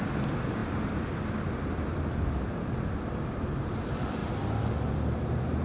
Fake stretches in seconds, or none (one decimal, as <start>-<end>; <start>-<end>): none